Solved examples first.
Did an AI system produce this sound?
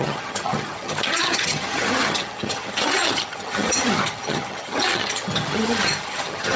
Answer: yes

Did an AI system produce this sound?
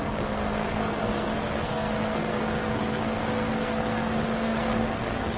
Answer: yes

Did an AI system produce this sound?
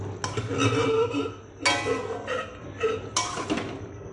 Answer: no